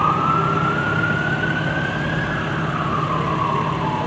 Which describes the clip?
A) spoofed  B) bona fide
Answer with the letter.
B